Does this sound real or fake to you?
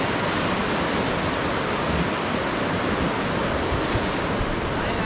real